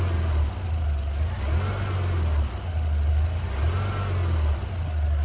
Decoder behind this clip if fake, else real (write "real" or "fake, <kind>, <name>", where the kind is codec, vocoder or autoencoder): real